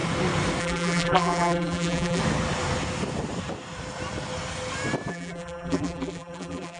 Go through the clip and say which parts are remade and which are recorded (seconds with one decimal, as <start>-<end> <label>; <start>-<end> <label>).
0.0-0.6 recorded; 0.6-2.2 remade; 2.2-5.1 recorded; 5.1-6.8 remade